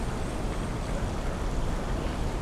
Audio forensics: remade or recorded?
recorded